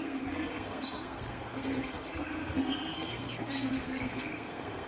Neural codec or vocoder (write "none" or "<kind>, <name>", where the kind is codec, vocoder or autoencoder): codec, SNAC